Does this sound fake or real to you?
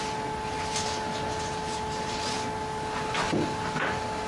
real